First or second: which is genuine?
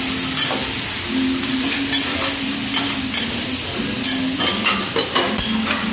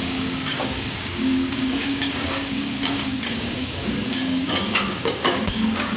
first